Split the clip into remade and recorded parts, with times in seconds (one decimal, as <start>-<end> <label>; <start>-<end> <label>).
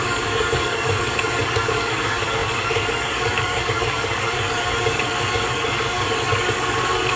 0.0-7.2 remade